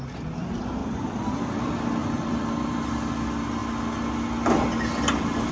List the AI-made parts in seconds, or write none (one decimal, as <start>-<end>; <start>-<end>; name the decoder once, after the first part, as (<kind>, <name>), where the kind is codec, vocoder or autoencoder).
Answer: 0.8-1.6 (vocoder, BigVGAN v2); 2.0-3.1